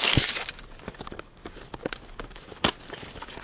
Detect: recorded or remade remade